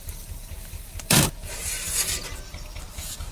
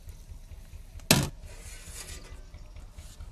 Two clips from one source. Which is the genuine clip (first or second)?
second